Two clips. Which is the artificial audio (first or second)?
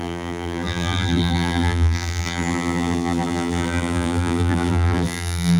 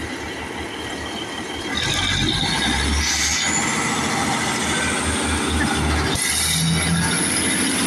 first